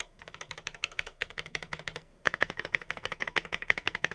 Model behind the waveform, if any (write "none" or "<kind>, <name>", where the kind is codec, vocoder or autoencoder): codec, SNAC